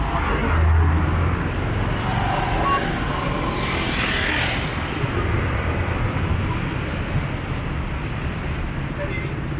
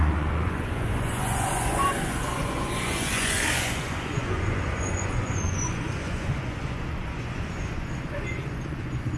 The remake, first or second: second